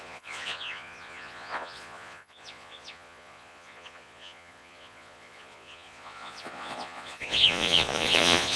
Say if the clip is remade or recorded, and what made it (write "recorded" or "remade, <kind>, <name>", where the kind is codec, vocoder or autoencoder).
remade, vocoder, Vocos